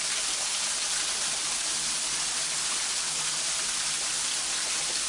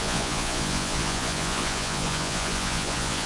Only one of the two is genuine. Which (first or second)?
first